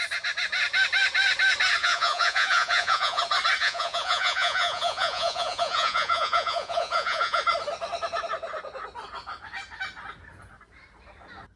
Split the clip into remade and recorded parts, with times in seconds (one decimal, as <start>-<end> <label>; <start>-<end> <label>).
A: 0.0-1.8 recorded; 1.8-3.2 remade; 3.2-3.6 recorded; 3.6-7.4 remade; 7.4-11.6 recorded